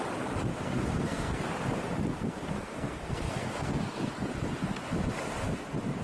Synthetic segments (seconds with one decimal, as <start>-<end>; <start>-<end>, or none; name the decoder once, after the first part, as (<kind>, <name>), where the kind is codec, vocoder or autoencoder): 0.5-1.4 (codec, SNAC); 2.1-4.1